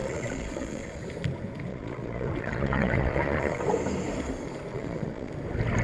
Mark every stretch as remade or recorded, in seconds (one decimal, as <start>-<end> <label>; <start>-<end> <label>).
0.0-1.0 remade; 1.0-1.7 recorded; 1.7-3.6 remade; 3.6-4.7 recorded; 4.7-5.3 remade; 5.3-5.8 recorded